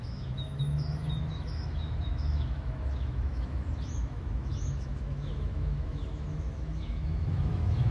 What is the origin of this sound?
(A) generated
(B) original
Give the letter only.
A